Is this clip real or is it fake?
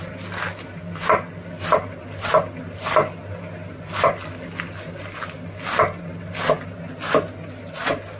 real